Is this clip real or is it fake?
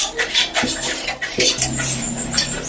real